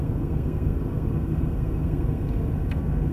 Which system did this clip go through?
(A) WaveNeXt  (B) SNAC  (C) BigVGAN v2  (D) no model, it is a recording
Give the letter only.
B